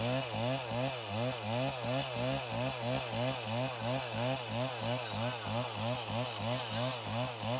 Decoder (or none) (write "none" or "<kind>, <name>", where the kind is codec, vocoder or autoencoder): none